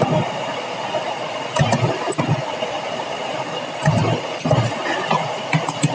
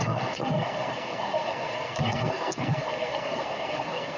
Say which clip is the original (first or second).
first